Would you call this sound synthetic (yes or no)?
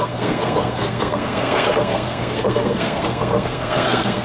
yes